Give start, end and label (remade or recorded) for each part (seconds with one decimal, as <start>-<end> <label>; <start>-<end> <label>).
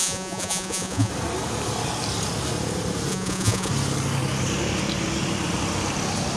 0.0-1.1 remade; 1.1-3.1 recorded; 3.1-3.7 remade; 3.7-6.4 recorded